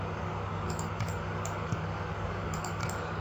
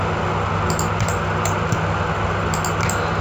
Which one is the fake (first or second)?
first